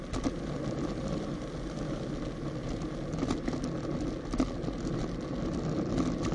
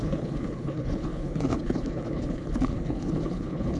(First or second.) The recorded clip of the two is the first